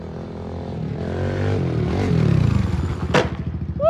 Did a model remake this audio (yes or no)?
no